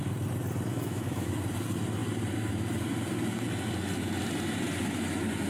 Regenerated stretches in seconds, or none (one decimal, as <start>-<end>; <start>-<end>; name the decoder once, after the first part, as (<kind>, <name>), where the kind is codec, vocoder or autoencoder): 0.7-1.3 (autoencoder, DAC-VAE)